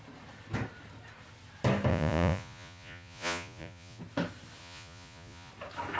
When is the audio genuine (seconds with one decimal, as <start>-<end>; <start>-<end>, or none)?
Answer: 0.0-1.9; 4.0-4.6; 5.5-6.0